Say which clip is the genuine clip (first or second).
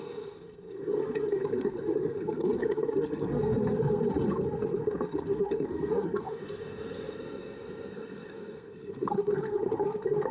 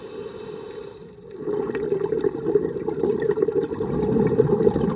second